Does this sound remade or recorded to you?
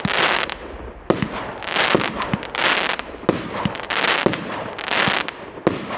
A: recorded